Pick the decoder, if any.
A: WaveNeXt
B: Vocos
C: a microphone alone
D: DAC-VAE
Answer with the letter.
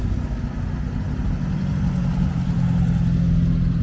C